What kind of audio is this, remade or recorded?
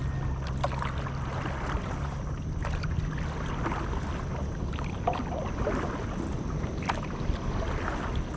recorded